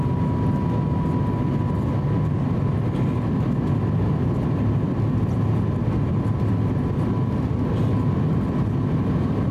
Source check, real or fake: real